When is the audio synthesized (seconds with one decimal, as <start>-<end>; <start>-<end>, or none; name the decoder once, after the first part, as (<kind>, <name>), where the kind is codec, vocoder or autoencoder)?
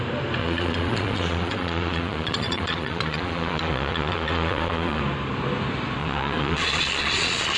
0.4-5.0 (vocoder, Vocos); 6.0-7.6